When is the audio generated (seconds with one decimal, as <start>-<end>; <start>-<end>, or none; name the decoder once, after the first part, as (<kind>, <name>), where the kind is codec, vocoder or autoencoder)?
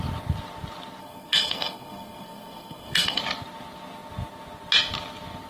1.0-3.2 (codec, SNAC)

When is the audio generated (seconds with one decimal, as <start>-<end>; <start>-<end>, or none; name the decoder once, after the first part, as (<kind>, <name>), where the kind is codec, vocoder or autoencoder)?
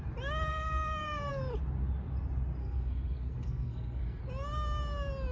0.5-1.3 (codec, SNAC); 2.6-4.2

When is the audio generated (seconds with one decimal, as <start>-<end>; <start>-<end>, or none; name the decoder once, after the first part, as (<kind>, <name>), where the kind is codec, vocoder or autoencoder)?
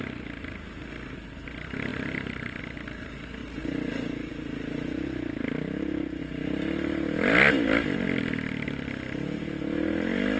1.9-2.6 (vocoder, BigVGAN v2)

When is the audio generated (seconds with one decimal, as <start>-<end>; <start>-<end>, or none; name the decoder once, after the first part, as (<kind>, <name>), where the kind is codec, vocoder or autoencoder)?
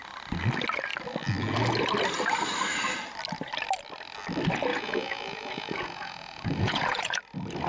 4.7-7.2 (vocoder, Vocos)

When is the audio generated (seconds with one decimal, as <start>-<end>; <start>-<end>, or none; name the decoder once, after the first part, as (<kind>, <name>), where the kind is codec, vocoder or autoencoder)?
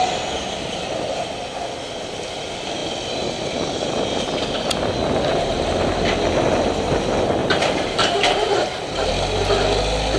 7.4-9.1 (vocoder, BigVGAN v2)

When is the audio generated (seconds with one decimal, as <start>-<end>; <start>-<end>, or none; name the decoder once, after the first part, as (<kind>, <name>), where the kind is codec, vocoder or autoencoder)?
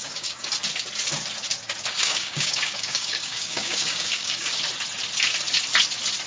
0.0-0.5 (codec, DAC); 2.0-4.6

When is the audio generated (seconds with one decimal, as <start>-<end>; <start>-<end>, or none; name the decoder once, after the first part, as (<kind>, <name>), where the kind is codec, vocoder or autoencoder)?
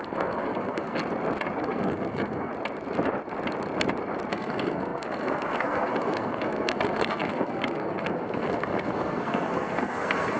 0.0-1.0 (codec, SNAC); 1.6-2.5; 4.3-10.4